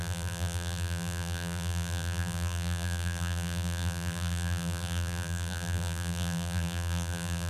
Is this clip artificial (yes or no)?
yes